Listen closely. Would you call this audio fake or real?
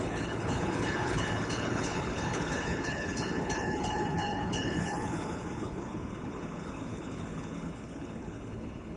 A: fake